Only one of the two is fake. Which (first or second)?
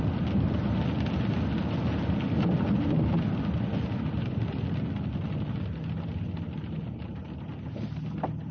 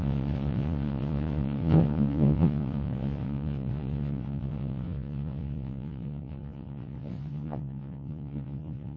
second